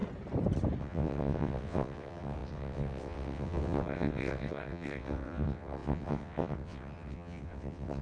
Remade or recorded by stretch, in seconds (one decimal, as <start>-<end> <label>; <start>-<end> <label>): 0.0-0.8 recorded; 0.8-8.0 remade